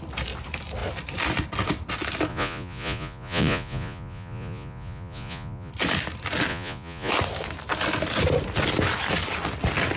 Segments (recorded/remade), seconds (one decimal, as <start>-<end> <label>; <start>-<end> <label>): 0.0-2.3 recorded; 2.3-5.7 remade; 5.7-6.5 recorded; 6.5-7.1 remade; 7.1-10.0 recorded